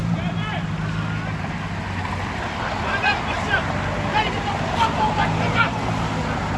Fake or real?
real